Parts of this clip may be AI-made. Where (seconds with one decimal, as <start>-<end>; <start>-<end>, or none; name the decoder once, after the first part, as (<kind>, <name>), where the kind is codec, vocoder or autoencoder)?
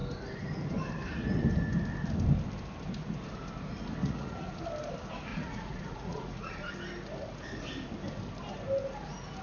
4.0-4.6 (vocoder, Vocos); 5.3-6.7